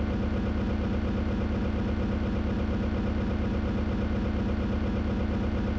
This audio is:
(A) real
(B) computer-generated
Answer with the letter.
A